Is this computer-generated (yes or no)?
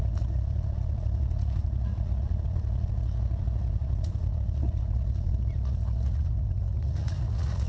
yes